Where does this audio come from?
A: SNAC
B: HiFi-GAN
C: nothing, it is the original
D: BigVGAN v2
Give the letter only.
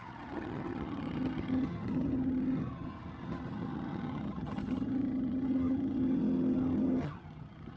B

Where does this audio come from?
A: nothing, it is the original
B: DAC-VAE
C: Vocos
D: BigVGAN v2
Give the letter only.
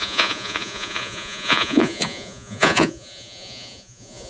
C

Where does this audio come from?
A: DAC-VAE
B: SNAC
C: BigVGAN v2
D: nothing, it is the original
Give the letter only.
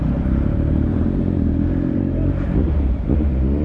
C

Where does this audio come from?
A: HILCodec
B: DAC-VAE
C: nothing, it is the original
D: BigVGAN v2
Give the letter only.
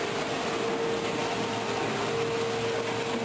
C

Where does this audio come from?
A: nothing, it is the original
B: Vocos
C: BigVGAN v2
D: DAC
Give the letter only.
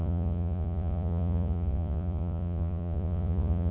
B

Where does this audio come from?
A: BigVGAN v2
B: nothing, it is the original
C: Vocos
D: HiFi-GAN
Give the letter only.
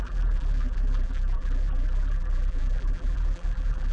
A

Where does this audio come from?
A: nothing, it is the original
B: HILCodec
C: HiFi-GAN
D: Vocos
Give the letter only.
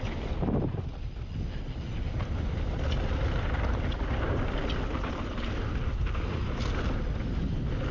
A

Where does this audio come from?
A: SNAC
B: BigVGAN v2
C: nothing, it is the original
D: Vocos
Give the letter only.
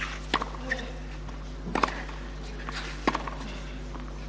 C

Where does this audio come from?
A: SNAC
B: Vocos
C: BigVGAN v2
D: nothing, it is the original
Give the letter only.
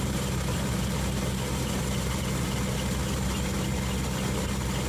D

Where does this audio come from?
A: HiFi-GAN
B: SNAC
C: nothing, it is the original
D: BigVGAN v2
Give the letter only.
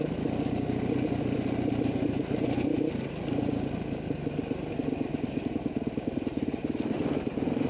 C